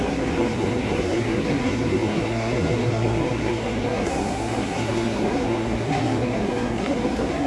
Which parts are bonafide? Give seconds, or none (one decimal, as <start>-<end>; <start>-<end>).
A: none

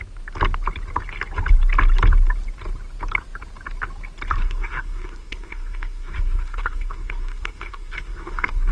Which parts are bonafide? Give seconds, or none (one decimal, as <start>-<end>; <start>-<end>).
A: 0.0-4.4

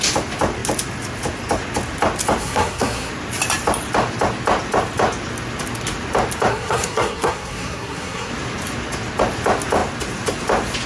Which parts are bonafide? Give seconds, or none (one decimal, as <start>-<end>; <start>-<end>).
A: 0.0-2.4; 3.1-6.5; 8.3-10.9

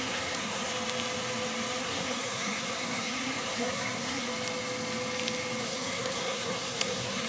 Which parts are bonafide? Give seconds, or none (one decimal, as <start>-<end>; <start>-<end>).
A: 0.7-1.8; 4.3-5.6